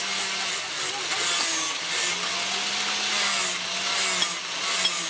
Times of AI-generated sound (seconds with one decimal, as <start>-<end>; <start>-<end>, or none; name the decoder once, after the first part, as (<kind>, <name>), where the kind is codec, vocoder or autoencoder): none